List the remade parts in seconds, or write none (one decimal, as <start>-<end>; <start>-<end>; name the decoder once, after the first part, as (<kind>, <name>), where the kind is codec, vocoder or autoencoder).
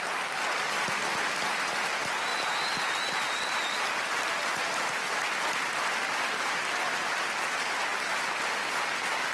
none